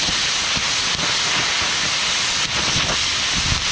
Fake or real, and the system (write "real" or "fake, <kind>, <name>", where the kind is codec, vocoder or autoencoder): real